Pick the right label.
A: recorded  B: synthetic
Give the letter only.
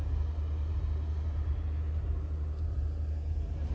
A